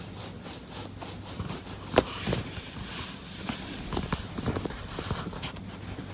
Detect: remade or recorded recorded